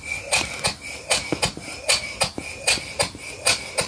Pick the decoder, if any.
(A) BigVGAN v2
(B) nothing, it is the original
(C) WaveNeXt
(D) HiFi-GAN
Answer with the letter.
B